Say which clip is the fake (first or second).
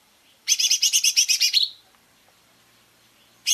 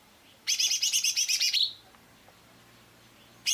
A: first